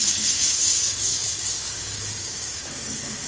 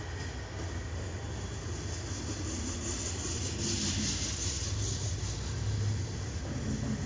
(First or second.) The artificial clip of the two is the first